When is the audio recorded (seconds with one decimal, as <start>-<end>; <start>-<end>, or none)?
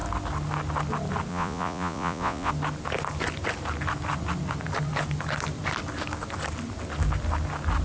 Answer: 0.0-1.3; 2.5-7.8